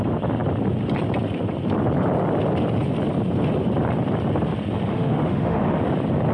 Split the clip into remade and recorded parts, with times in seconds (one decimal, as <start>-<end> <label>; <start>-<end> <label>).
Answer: 0.0-4.9 recorded; 4.9-5.8 remade; 5.8-6.3 recorded